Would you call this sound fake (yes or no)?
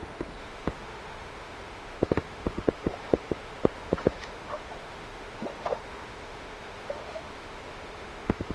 yes